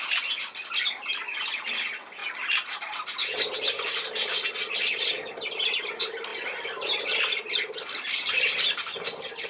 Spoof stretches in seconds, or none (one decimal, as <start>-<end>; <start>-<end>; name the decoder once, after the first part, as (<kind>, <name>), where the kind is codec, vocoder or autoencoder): none